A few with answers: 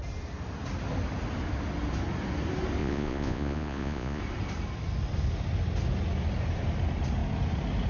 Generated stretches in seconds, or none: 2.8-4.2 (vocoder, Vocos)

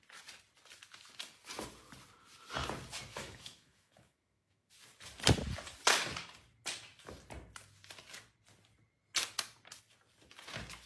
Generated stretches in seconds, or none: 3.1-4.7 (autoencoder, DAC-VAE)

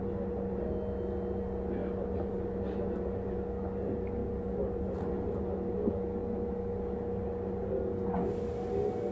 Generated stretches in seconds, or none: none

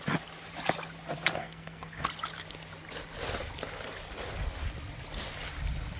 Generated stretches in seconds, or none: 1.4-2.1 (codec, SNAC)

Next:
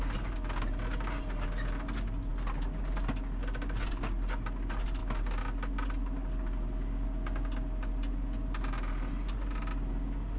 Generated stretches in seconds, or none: none

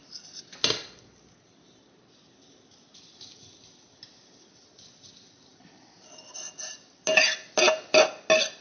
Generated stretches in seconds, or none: none

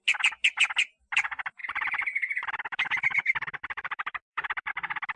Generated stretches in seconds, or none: 1.6-4.7 (vocoder, BigVGAN v2)

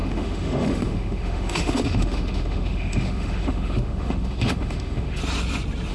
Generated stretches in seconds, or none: 0.0-5.2 (autoencoder, DAC-VAE)